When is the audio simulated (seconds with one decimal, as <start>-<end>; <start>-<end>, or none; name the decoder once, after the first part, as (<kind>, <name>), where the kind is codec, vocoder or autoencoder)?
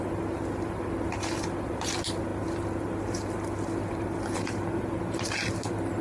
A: none